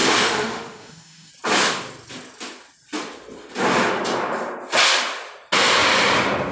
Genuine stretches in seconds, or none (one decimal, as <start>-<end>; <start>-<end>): 1.3-6.5